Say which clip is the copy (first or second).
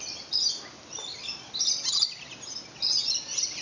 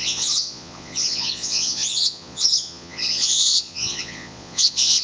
second